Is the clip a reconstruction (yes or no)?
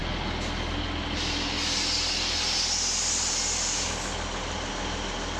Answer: no